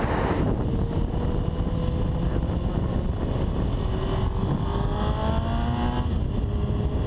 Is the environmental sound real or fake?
real